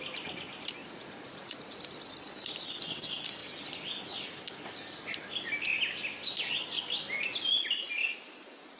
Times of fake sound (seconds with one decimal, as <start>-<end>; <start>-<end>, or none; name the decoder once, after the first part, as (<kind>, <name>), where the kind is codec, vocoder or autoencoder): 0.8-1.8 (vocoder, Vocos)